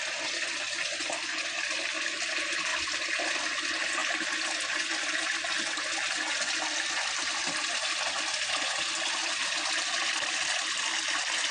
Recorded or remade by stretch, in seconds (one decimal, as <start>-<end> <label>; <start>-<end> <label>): 0.0-11.5 recorded